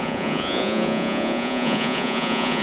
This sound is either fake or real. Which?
fake